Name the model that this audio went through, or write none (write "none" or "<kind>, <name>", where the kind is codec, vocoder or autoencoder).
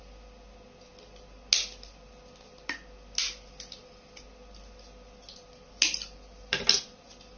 none